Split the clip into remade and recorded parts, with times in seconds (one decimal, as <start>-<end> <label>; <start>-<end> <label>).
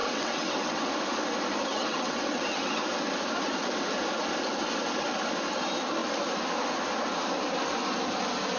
0.0-0.9 remade; 0.9-1.7 recorded; 1.7-2.8 remade; 2.8-8.6 recorded